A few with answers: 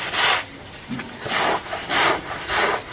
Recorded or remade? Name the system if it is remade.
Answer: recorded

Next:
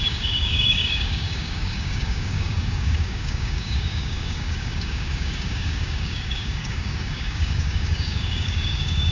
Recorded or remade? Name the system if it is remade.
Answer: remade, codec, DAC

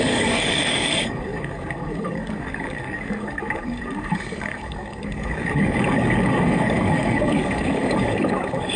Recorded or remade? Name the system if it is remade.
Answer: remade, codec, DAC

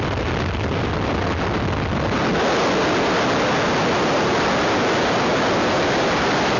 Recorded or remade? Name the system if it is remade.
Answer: recorded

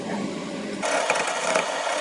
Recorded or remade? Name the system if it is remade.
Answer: remade, vocoder, Vocos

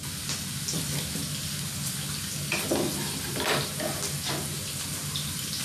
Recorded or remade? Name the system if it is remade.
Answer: recorded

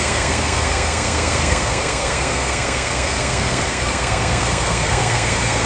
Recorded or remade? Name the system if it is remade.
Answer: remade, codec, SNAC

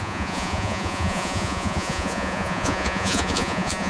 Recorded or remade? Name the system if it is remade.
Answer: remade, vocoder, Vocos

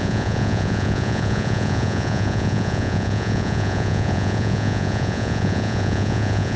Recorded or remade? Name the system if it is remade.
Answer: remade, vocoder, Vocos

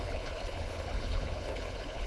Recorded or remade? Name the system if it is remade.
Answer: remade, codec, HILCodec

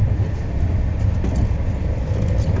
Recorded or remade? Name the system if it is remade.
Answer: recorded